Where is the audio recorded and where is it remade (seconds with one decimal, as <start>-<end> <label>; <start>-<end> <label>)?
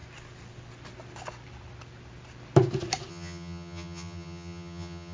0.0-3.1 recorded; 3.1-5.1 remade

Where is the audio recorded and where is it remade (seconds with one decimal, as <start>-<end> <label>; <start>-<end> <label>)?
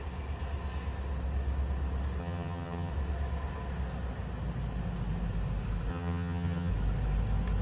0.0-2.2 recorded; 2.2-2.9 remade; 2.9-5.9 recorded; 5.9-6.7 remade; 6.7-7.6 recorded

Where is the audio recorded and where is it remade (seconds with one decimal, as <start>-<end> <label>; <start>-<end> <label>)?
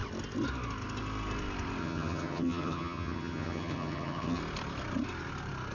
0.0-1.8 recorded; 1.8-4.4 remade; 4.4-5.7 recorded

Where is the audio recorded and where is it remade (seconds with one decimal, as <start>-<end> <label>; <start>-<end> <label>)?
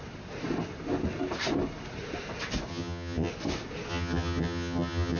0.0-2.7 recorded; 2.7-3.3 remade; 3.3-3.9 recorded; 3.9-5.2 remade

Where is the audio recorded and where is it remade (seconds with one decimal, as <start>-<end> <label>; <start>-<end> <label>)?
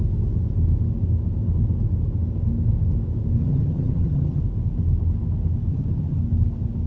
0.0-3.4 recorded; 3.4-4.4 remade; 4.4-5.7 recorded; 5.7-6.2 remade; 6.2-6.9 recorded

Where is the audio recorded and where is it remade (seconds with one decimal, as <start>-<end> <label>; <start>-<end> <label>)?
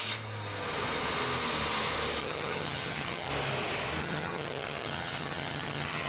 0.0-2.2 recorded; 2.2-3.3 remade; 3.3-4.0 recorded; 4.0-6.1 remade